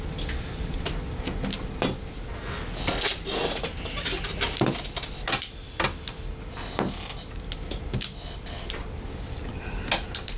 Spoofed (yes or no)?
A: no